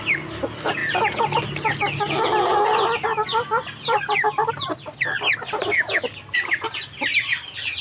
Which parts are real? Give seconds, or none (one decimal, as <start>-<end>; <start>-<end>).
0.8-4.5; 7.1-7.8